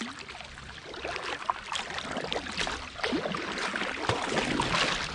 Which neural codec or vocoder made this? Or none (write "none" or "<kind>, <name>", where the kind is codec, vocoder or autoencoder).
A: none